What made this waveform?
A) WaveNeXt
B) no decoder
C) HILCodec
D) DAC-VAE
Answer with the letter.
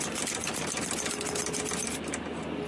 B